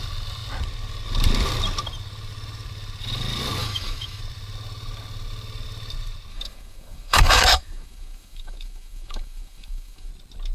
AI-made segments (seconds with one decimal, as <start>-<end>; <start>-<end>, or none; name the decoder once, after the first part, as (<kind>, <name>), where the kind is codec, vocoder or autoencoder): 3.6-4.2 (autoencoder, DAC-VAE); 6.3-10.1